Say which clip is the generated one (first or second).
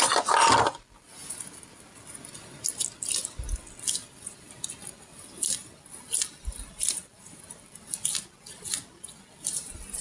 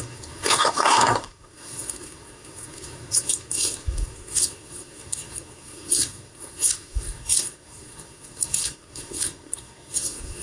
second